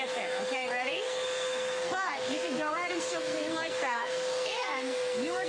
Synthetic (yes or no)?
yes